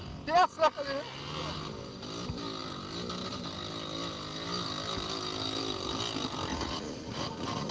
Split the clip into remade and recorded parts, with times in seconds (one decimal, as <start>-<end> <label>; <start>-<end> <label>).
0.0-6.5 recorded; 6.5-7.7 remade